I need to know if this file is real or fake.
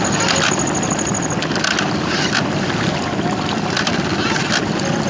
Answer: real